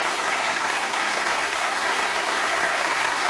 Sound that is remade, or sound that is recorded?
remade